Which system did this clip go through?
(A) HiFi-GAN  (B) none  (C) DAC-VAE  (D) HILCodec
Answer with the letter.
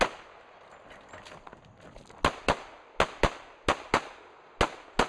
B